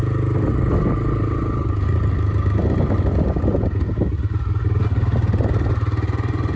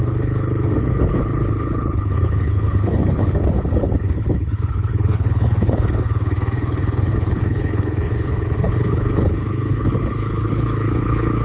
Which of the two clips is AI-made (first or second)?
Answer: second